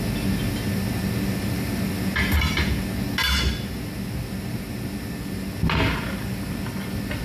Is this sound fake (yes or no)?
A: no